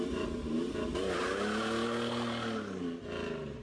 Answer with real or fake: real